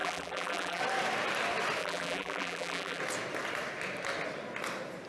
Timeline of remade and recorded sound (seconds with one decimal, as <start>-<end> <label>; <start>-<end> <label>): 0.0-0.8 remade; 0.8-1.8 recorded; 1.8-3.0 remade; 3.0-5.1 recorded